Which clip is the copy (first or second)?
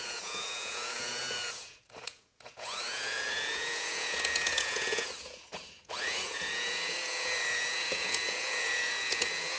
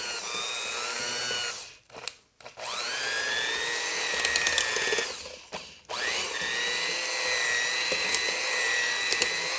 first